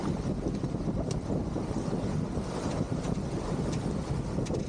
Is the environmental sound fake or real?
real